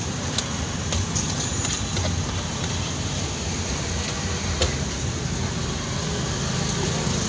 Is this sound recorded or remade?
recorded